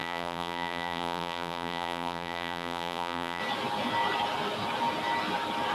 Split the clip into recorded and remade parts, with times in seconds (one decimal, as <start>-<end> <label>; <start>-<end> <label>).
0.0-3.4 remade; 3.4-5.7 recorded